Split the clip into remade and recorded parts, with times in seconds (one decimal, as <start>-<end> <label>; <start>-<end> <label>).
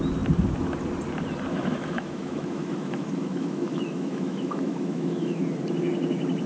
0.0-1.5 recorded; 1.5-5.4 remade; 5.4-6.5 recorded